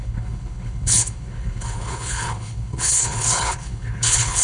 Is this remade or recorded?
remade